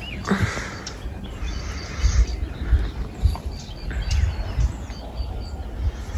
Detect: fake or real real